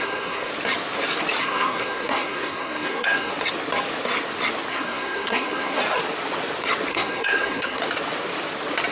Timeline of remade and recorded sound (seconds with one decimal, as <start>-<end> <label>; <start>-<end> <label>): 0.0-0.5 remade; 0.5-1.4 recorded; 1.4-3.3 remade; 3.3-4.7 recorded; 4.7-5.8 remade; 5.8-6.9 recorded; 6.9-7.8 remade; 7.8-8.9 recorded